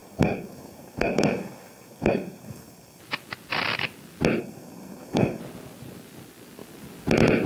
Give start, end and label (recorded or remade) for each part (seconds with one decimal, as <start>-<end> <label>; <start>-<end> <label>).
0.0-3.0 remade; 3.0-4.4 recorded; 4.4-5.4 remade; 5.4-7.5 recorded